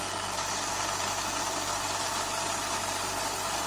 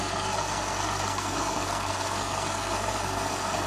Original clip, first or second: first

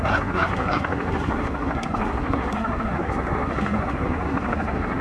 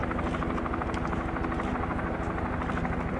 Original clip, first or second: second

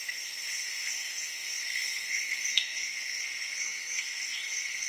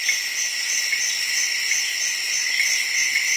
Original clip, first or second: second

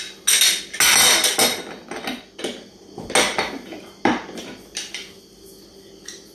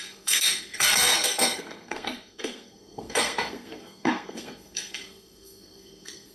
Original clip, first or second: first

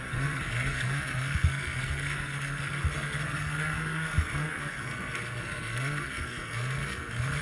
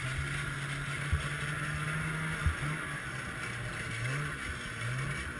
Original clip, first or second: second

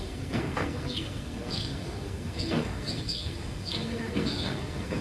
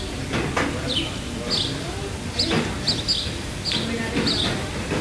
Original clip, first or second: second